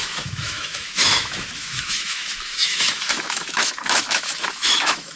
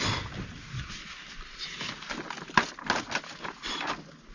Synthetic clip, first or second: first